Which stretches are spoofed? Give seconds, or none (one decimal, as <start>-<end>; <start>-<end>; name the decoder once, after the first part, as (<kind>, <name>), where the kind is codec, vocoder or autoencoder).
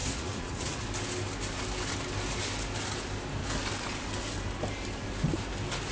0.0-0.8 (vocoder, Vocos)